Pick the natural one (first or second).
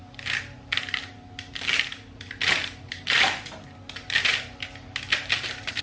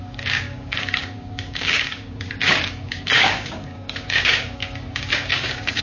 first